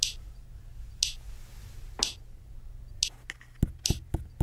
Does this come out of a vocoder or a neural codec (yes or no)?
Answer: no